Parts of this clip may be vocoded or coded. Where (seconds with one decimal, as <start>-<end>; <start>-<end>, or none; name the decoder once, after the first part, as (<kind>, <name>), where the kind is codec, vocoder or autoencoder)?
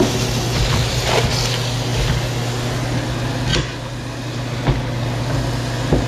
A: none